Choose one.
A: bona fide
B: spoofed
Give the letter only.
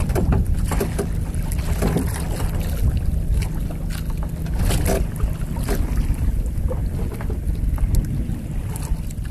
A